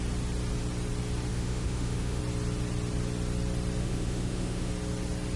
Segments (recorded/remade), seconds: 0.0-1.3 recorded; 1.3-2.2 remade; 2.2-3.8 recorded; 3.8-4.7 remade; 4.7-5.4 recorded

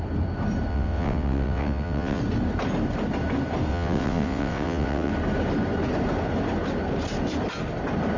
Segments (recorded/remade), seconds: 0.0-0.7 recorded; 0.7-2.2 remade; 2.2-3.7 recorded; 3.7-5.1 remade; 5.1-8.2 recorded

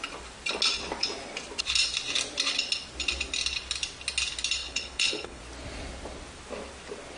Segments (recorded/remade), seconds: 0.0-4.6 recorded; 4.6-5.4 remade; 5.4-7.2 recorded